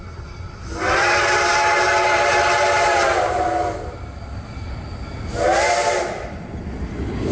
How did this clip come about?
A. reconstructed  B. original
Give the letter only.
B